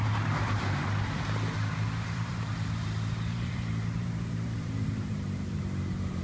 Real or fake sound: fake